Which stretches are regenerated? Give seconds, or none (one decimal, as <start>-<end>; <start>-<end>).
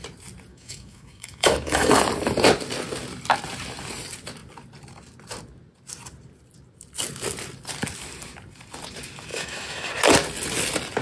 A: 0.5-1.9; 9.3-9.9